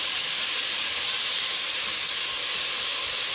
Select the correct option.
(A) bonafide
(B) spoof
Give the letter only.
A